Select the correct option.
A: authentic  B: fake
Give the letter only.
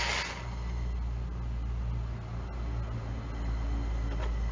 A